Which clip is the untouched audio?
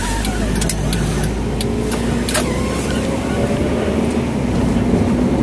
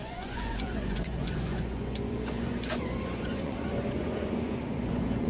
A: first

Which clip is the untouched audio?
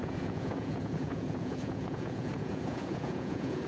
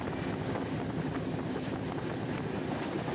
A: second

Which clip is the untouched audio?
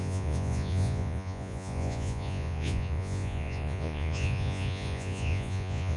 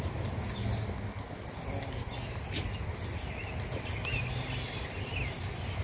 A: second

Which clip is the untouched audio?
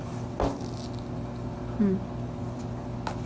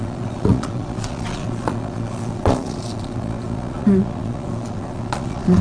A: first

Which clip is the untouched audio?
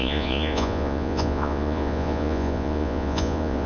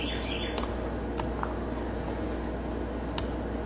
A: second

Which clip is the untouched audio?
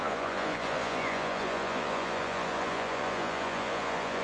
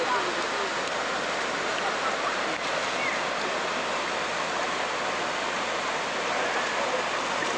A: second